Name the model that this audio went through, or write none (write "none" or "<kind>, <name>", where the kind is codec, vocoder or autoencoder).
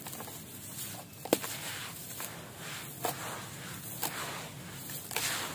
none